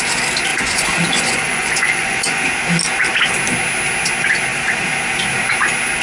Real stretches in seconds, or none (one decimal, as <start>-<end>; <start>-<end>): 0.0-0.5; 2.4-6.0